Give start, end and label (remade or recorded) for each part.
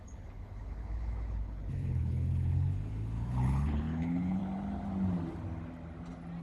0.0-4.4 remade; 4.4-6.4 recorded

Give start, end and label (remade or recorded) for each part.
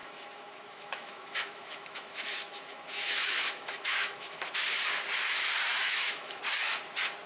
0.0-4.4 remade; 4.4-5.7 recorded; 5.7-6.4 remade; 6.4-7.3 recorded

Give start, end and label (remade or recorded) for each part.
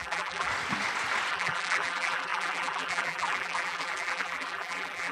0.0-0.5 remade; 0.5-1.3 recorded; 1.3-5.1 remade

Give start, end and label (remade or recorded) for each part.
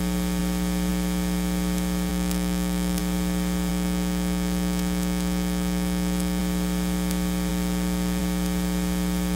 0.0-2.1 recorded; 2.1-3.0 remade; 3.0-3.7 recorded; 3.7-6.4 remade; 6.4-9.4 recorded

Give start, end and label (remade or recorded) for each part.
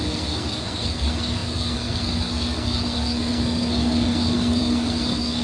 0.0-5.4 remade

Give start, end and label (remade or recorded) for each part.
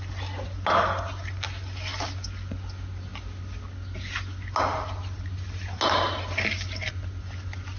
0.0-7.8 recorded